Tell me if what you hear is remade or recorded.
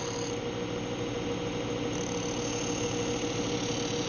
recorded